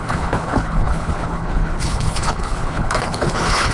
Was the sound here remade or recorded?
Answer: remade